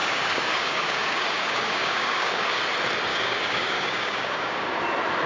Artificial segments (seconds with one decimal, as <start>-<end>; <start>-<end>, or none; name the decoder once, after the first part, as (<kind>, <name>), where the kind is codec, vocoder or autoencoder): 0.0-2.6 (codec, DAC); 3.1-4.7